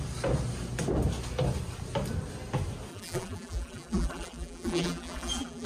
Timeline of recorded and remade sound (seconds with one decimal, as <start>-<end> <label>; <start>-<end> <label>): 0.0-2.9 recorded; 2.9-5.7 remade